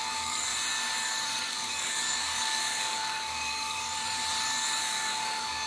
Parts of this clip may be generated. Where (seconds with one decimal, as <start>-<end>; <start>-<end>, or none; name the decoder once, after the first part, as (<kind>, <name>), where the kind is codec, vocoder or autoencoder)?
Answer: 0.0-0.5 (codec, DAC); 1.5-4.0; 4.8-5.7